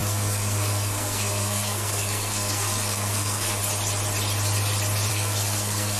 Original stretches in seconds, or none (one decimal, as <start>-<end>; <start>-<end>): 3.6-5.1